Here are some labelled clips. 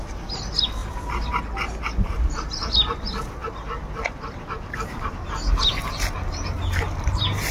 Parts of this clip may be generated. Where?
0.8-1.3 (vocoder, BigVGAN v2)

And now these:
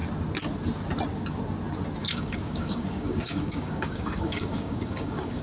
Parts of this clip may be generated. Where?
2.0-5.4 (codec, DAC)

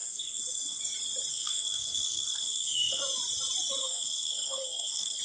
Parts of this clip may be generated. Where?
0.0-0.8 (codec, SNAC); 1.3-3.0; 3.8-5.2

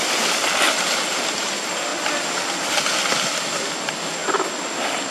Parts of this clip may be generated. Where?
none

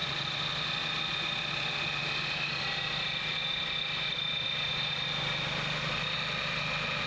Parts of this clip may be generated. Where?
none